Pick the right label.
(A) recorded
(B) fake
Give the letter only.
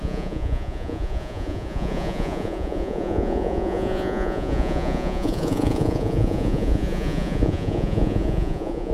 B